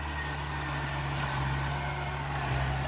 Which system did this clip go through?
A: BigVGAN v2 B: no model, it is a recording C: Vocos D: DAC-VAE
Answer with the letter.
B